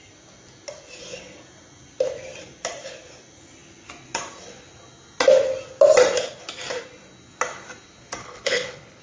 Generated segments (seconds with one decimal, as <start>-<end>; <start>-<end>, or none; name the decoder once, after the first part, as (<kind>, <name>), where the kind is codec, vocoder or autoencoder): 8.2-9.0 (codec, HILCodec)